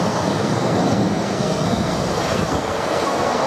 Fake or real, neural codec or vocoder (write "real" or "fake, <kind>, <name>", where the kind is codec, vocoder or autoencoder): fake, codec, SNAC